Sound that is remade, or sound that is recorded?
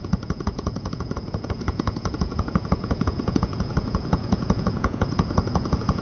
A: remade